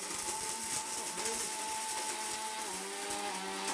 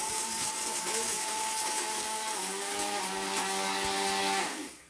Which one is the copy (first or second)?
second